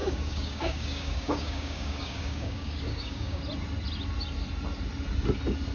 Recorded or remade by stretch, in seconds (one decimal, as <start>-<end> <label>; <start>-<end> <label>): 0.0-3.4 remade; 3.4-5.7 recorded